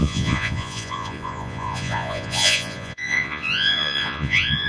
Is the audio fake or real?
fake